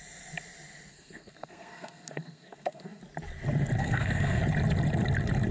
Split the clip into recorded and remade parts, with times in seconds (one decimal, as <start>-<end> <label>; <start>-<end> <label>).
0.0-0.9 recorded; 0.9-3.0 remade; 3.0-3.8 recorded; 3.8-4.4 remade; 4.4-5.5 recorded